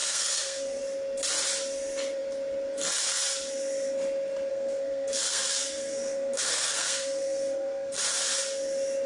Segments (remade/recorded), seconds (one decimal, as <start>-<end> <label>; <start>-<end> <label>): 0.0-0.8 remade; 0.8-4.5 recorded; 4.5-8.0 remade; 8.0-9.1 recorded